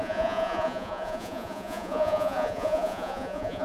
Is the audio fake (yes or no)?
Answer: yes